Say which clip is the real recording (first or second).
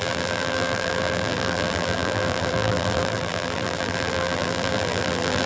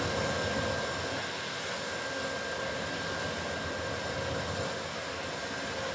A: second